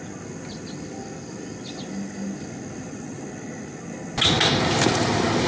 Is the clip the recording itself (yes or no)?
yes